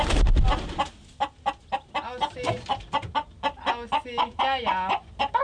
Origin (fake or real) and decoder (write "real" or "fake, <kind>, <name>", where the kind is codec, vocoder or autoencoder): real